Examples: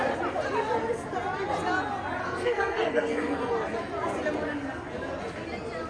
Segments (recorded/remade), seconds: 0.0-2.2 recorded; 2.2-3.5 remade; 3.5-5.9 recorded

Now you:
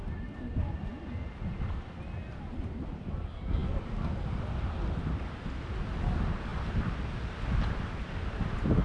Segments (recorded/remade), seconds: 0.0-8.8 recorded

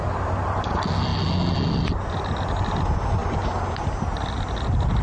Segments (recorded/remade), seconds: 0.0-5.0 recorded

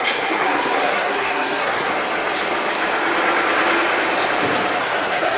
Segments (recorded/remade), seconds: 0.0-1.9 remade; 1.9-4.8 recorded; 4.8-5.4 remade

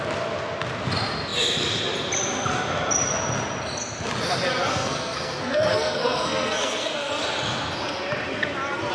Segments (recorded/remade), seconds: 0.0-4.7 recorded; 4.7-7.1 remade; 7.1-8.9 recorded

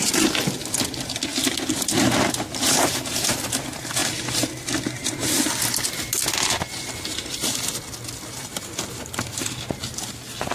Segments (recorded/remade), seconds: 0.0-10.5 recorded